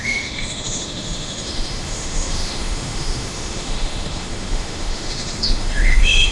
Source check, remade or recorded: remade